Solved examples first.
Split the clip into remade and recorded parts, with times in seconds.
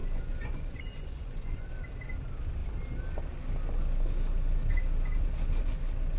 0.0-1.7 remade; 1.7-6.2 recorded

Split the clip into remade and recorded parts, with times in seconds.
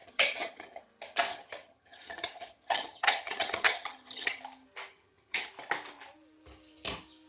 0.0-0.8 remade; 0.8-1.3 recorded; 1.3-4.4 remade; 4.4-4.9 recorded; 4.9-5.5 remade; 5.5-7.3 recorded